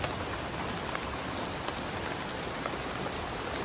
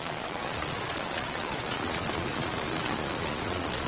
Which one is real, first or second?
first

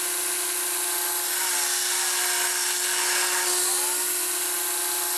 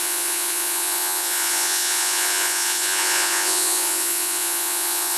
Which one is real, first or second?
first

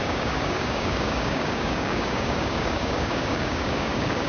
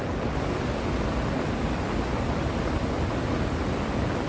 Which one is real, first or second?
second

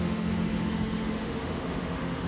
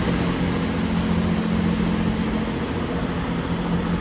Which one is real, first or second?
second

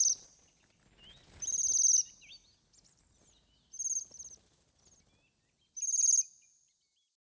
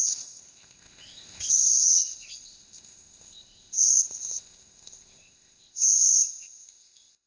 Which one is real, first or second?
first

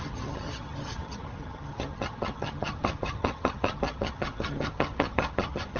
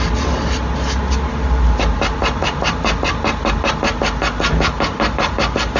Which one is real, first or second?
second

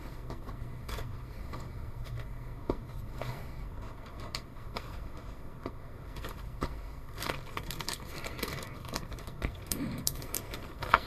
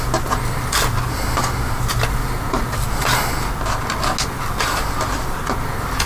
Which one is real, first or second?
second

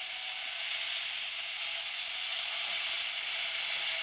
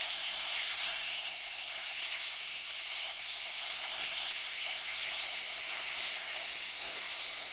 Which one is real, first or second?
first